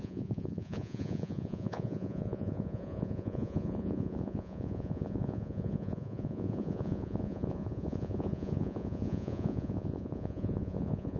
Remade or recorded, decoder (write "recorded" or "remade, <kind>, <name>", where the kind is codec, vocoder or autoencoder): remade, vocoder, Vocos